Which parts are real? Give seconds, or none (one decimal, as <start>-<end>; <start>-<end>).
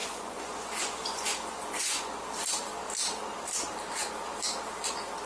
2.2-5.3